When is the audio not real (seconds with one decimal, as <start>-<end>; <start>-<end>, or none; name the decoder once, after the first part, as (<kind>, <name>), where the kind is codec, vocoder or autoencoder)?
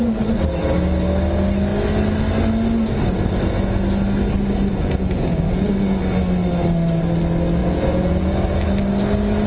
4.7-5.7 (vocoder, Vocos); 7.6-8.3